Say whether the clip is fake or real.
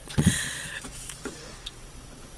fake